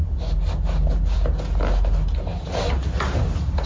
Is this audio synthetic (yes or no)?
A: no